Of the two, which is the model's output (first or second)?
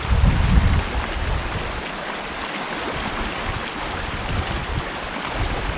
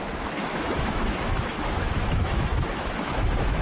second